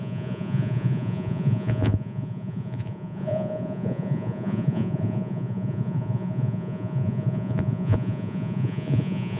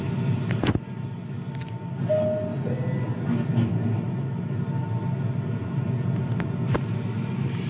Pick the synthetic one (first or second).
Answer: first